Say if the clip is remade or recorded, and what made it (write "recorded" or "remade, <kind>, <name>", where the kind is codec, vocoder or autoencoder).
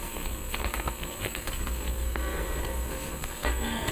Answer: remade, codec, SNAC